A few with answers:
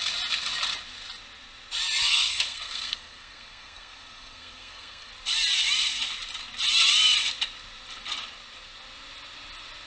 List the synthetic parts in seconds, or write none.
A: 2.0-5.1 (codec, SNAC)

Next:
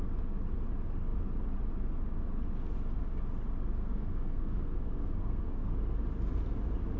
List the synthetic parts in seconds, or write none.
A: 3.8-5.7 (codec, SNAC)

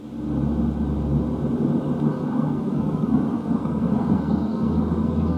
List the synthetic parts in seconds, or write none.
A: 2.2-5.4 (codec, SNAC)

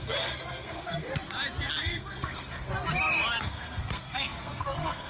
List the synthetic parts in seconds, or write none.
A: 0.0-1.1 (codec, SNAC); 1.7-2.7; 3.4-5.1